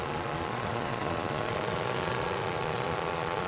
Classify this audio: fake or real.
fake